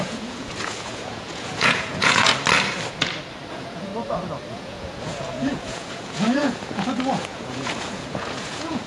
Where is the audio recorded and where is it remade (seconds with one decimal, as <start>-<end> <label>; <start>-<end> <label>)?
0.0-2.3 remade; 2.3-3.5 recorded; 3.5-3.9 remade; 3.9-4.5 recorded; 4.5-8.9 remade